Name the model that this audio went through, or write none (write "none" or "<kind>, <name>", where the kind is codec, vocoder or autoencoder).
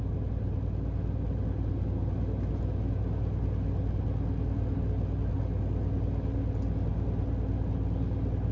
none